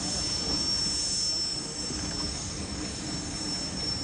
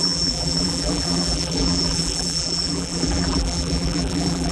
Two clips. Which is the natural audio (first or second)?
first